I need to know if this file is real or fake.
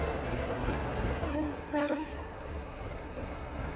fake